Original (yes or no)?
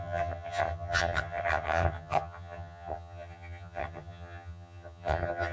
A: no